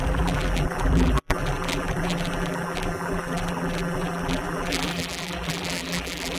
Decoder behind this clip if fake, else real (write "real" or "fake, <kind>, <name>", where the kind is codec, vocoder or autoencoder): fake, vocoder, BigVGAN v2